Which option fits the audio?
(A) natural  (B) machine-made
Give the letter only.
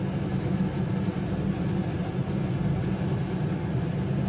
A